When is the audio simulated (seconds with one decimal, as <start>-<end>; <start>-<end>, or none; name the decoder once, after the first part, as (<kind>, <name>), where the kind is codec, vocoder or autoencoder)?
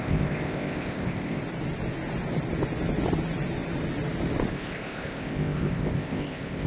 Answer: 0.0-1.4 (codec, ZipCodec); 4.5-6.7